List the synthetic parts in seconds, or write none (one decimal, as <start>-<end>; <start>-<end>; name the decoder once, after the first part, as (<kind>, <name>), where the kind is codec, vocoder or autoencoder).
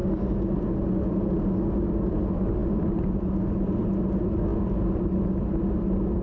none